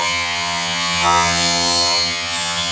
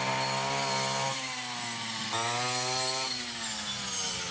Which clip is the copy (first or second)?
first